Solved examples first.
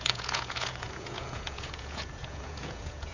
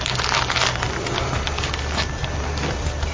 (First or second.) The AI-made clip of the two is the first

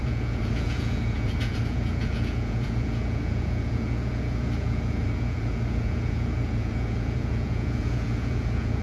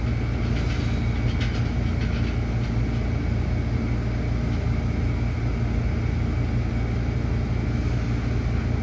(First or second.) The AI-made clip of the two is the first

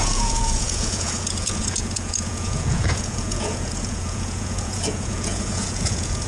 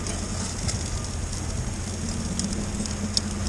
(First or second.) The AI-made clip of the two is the first